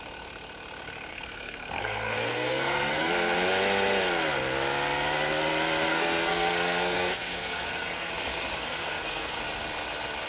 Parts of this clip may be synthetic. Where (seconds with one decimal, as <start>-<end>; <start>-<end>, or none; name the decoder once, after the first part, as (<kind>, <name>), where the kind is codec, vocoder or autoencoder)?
1.1-3.1 (codec, SNAC); 5.9-8.1; 8.6-9.4